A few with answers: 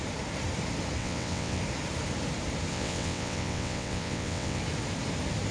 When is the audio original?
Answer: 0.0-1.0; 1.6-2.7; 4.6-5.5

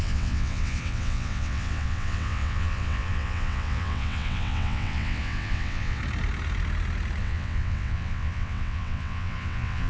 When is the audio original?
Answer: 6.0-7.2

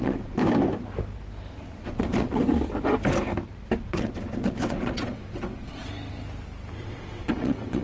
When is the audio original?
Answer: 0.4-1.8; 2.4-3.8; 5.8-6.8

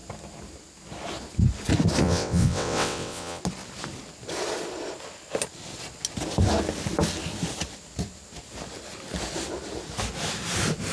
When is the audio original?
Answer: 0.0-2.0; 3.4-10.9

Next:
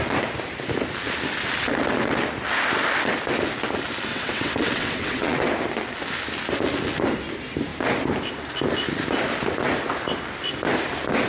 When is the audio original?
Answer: 0.0-4.1; 5.4-11.3

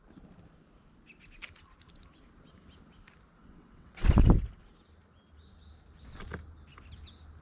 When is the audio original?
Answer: 0.0-3.4; 4.3-7.4

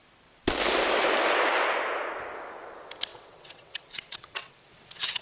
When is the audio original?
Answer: 0.0-3.1